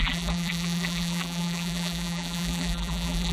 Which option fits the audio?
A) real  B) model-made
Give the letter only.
B